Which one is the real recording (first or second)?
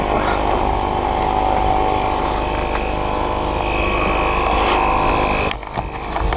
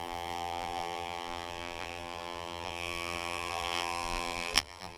first